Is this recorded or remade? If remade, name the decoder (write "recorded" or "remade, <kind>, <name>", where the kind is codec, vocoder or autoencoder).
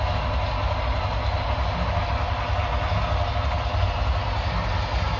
recorded